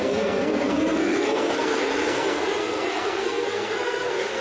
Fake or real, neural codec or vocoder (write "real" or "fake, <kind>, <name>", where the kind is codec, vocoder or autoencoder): fake, codec, SNAC